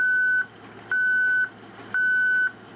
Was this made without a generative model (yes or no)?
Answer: yes